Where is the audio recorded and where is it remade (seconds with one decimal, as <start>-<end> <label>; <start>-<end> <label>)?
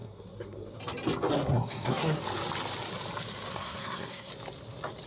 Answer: 0.0-0.8 remade; 0.8-1.3 recorded; 1.3-2.2 remade; 2.2-3.5 recorded; 3.5-4.3 remade; 4.3-5.1 recorded